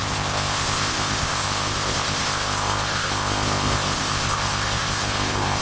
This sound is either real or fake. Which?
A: fake